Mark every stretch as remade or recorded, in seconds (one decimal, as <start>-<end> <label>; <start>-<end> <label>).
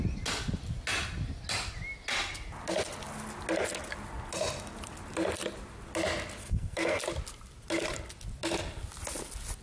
0.0-6.4 recorded; 6.4-7.0 remade; 7.0-9.6 recorded